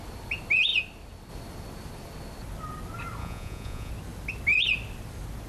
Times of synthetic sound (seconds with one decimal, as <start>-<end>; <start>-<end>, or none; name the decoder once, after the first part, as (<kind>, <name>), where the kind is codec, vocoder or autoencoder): 3.2-3.9 (vocoder, Vocos)